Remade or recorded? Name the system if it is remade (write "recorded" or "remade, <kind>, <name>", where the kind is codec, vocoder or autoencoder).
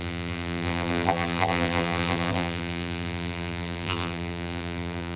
remade, vocoder, BigVGAN v2